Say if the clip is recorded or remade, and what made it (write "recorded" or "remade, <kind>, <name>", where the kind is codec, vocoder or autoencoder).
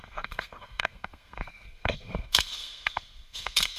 remade, codec, SNAC